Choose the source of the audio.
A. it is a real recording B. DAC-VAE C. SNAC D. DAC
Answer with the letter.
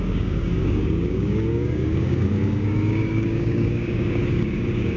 D